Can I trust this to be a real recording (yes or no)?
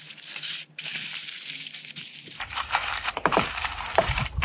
no